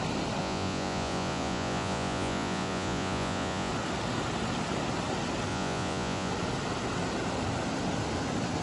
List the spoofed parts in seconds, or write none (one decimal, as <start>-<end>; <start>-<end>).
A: 0.4-3.7; 5.5-6.3